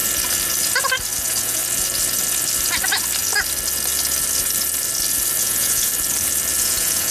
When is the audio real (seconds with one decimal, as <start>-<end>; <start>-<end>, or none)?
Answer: 0.0-1.2; 1.6-5.4; 5.9-6.6